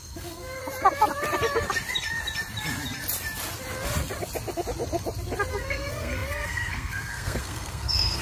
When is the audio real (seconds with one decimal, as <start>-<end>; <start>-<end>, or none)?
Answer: 0.6-5.5